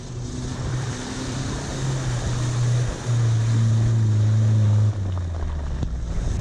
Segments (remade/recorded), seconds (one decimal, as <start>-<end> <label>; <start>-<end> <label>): 0.0-0.5 recorded; 0.5-1.7 remade; 1.7-6.4 recorded